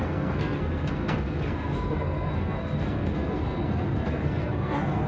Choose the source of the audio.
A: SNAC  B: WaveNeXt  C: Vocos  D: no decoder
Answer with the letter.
A